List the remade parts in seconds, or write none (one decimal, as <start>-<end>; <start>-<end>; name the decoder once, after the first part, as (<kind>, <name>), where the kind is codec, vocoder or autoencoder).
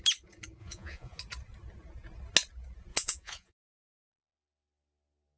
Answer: 0.6-1.2 (vocoder, Vocos); 2.9-3.6